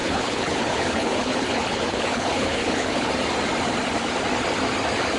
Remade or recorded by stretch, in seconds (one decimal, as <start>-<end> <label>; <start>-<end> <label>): 0.0-3.1 remade; 3.1-5.2 recorded

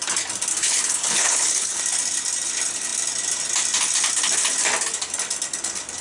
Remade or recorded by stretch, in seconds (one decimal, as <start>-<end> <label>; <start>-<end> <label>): 0.0-0.5 recorded; 0.5-1.8 remade; 1.8-6.0 recorded

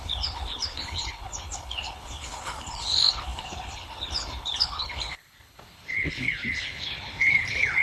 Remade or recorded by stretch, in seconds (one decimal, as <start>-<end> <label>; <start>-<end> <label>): 0.0-7.8 remade

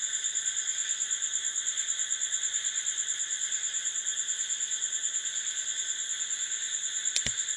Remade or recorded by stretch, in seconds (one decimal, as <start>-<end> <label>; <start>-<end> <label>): 0.0-7.6 recorded

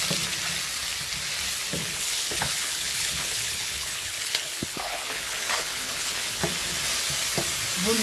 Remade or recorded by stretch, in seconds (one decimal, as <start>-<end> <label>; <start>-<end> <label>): 0.0-1.8 recorded; 1.8-6.4 remade; 6.4-8.0 recorded